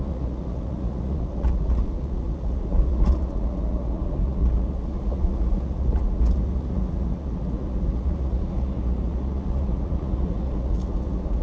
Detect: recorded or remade remade